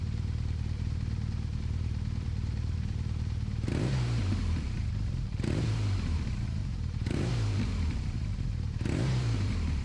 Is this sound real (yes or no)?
no